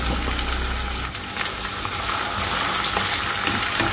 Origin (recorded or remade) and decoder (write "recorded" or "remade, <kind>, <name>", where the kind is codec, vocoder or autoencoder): recorded